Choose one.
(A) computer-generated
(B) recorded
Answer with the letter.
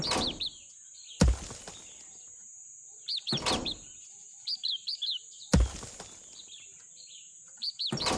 B